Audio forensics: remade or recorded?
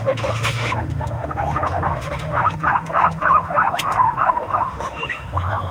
remade